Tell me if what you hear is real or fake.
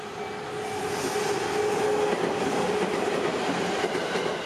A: real